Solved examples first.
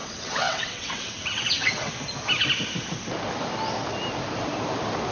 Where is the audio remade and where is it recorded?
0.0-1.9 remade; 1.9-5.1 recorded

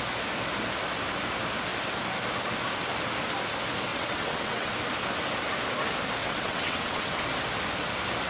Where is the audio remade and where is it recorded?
0.0-3.9 recorded; 3.9-4.7 remade; 4.7-6.2 recorded; 6.2-7.2 remade; 7.2-8.3 recorded